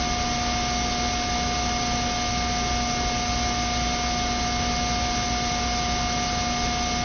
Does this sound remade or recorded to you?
recorded